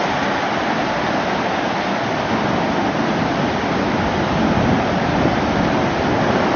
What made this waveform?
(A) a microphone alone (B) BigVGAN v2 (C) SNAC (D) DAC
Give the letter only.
A